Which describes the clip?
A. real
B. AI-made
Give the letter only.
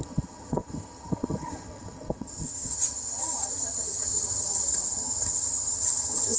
B